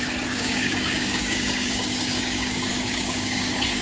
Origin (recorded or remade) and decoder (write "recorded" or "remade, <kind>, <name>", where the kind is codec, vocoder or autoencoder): remade, codec, DAC